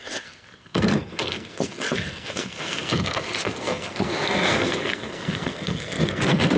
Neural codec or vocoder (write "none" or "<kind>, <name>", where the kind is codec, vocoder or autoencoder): codec, SNAC